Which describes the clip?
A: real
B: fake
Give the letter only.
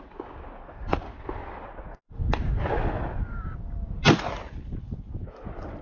A